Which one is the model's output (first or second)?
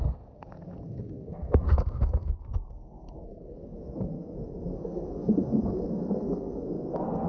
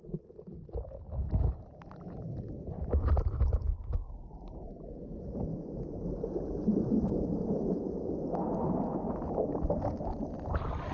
first